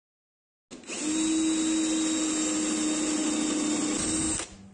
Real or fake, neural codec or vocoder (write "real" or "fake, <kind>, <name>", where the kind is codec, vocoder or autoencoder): real